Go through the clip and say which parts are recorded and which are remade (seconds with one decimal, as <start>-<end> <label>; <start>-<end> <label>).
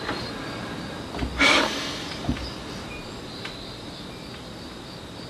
0.0-5.3 recorded